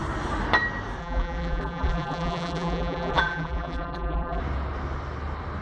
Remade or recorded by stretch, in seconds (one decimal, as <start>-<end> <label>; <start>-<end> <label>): 0.0-1.0 recorded; 1.0-4.4 remade; 4.4-5.6 recorded